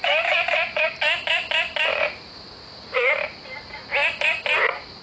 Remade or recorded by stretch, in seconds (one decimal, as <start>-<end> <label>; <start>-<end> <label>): 0.0-1.9 recorded; 1.9-3.1 remade; 3.1-5.0 recorded